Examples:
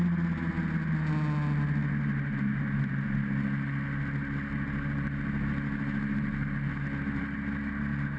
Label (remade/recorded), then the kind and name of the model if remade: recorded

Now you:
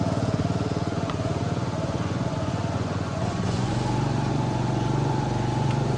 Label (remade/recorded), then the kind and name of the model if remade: remade, vocoder, Vocos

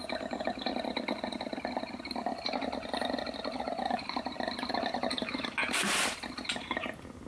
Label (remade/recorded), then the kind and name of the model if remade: recorded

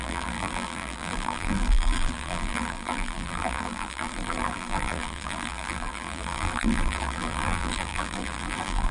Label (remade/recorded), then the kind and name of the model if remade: remade, vocoder, BigVGAN v2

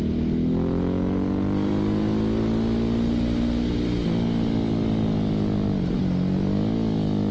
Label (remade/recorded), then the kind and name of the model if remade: recorded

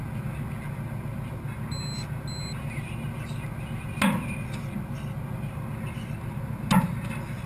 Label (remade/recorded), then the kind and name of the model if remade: recorded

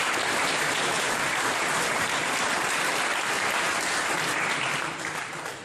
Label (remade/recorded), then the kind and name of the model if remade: remade, vocoder, BigVGAN v2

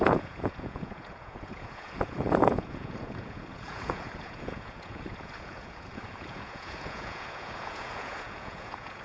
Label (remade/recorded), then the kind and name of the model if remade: remade, vocoder, Vocos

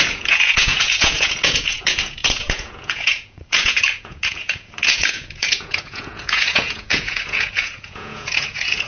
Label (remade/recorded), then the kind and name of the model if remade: remade, vocoder, Vocos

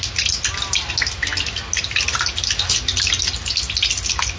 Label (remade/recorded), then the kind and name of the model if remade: recorded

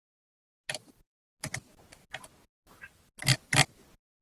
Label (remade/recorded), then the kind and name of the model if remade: recorded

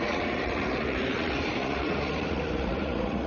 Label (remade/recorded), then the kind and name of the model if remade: remade, vocoder, Vocos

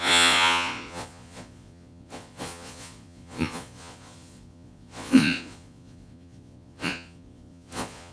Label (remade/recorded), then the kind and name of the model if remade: remade, vocoder, Vocos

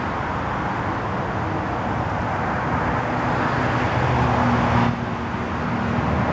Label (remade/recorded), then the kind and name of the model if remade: recorded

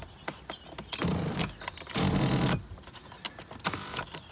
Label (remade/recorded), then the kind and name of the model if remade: recorded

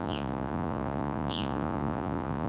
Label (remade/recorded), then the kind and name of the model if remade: remade, vocoder, Vocos